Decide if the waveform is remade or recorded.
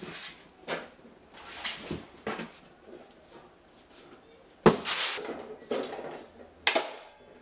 recorded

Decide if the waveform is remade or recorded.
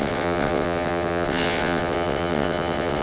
remade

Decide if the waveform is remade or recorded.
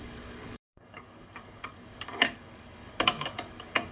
remade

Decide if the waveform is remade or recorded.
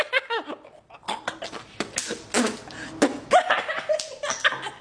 recorded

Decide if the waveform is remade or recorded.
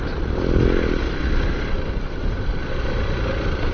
recorded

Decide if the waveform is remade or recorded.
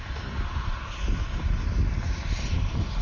recorded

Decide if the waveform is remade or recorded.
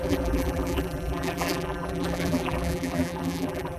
remade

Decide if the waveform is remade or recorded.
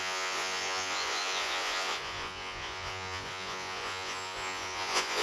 remade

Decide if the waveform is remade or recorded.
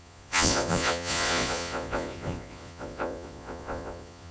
remade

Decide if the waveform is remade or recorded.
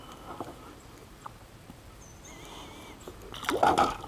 recorded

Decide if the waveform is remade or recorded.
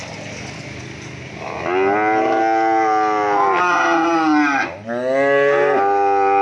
recorded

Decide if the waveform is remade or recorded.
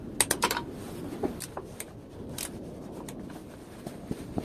recorded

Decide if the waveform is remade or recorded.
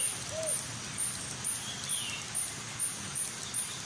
recorded